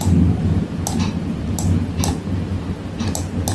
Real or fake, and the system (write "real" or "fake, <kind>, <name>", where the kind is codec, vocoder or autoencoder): real